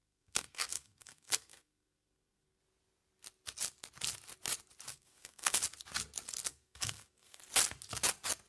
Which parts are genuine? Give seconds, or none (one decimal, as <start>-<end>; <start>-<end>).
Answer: 2.6-4.9; 5.6-6.5; 7.4-8.5